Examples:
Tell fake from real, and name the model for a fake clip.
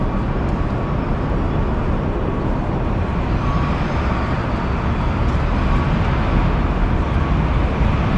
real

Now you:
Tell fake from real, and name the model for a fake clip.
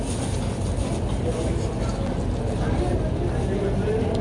real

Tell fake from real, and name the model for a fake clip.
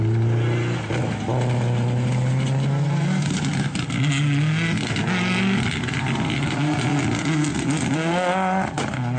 real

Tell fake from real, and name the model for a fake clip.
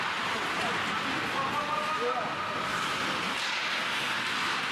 real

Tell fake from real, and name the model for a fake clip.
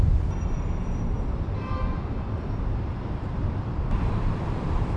fake, vocoder, BigVGAN v2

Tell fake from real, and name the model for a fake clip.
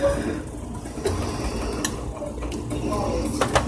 real